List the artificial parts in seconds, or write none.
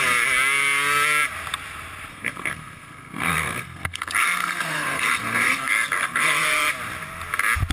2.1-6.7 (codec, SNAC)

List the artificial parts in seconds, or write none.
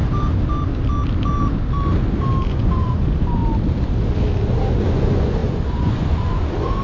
2.5-3.4 (vocoder, Vocos); 4.8-6.8